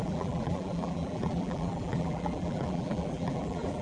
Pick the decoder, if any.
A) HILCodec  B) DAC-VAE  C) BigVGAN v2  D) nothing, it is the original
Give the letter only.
C